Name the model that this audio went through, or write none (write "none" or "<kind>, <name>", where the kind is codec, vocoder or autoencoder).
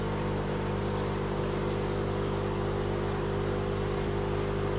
none